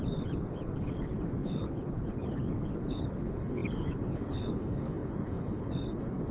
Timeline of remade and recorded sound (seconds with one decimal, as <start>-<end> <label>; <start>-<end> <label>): 0.0-6.3 remade